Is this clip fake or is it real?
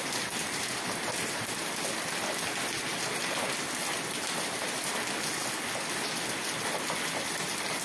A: real